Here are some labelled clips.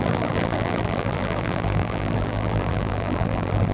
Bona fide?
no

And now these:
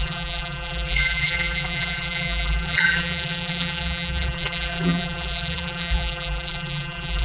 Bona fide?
no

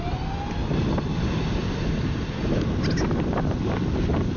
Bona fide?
yes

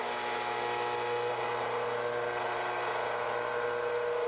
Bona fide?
yes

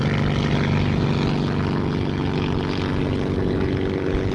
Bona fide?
yes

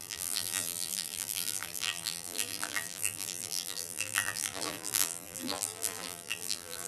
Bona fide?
no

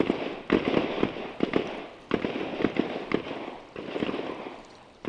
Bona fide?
yes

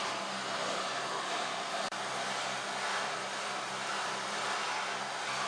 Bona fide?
no